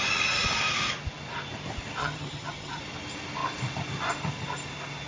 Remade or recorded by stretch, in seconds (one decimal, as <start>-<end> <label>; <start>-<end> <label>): 0.0-2.0 recorded; 2.0-2.8 remade; 2.8-5.1 recorded